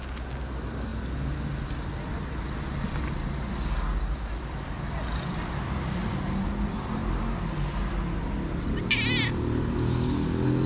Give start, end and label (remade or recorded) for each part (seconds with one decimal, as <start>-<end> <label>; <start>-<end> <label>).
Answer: 0.0-10.7 recorded